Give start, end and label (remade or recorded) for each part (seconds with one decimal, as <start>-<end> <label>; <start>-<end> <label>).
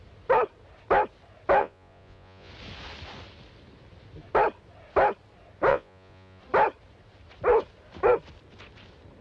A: 0.0-1.6 recorded; 1.6-2.5 remade; 2.5-5.7 recorded; 5.7-6.4 remade; 6.4-9.2 recorded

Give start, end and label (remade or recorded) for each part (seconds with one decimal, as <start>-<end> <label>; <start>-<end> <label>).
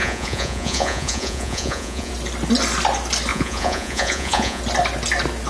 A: 0.0-2.1 remade; 2.1-3.3 recorded; 3.3-4.6 remade; 4.6-5.5 recorded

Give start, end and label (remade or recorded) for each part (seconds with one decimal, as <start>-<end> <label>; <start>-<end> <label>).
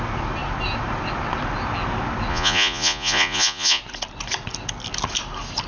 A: 0.0-2.3 recorded; 2.3-3.8 remade; 3.8-5.7 recorded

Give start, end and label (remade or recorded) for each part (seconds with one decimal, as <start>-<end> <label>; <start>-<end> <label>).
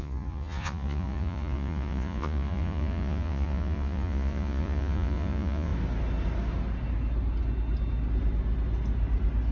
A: 0.0-5.7 remade; 5.7-9.5 recorded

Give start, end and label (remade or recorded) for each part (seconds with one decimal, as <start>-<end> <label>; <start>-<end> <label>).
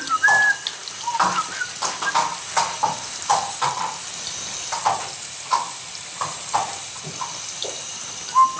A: 0.0-8.6 recorded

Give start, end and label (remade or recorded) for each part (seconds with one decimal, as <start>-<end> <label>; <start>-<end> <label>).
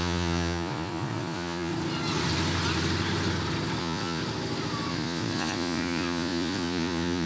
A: 0.0-1.7 remade; 1.7-3.8 recorded; 3.8-4.2 remade; 4.2-4.9 recorded; 4.9-7.3 remade